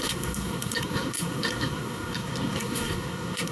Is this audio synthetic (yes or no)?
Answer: yes